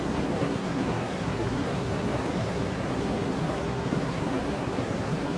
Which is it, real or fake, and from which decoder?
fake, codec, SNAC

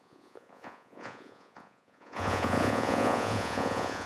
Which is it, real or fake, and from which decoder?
fake, vocoder, Vocos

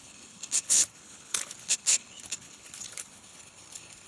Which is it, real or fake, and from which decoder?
fake, codec, HILCodec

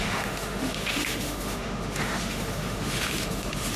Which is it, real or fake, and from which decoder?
fake, autoencoder, DAC-VAE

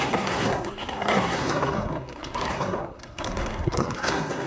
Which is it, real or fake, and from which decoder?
fake, codec, SNAC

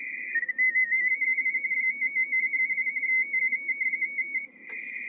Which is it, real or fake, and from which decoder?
real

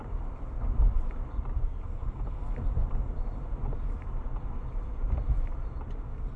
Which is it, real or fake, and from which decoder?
fake, vocoder, BigVGAN v2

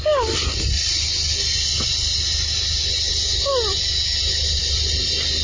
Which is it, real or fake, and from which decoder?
real